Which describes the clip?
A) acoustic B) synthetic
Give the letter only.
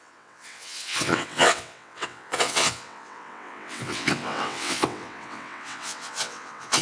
B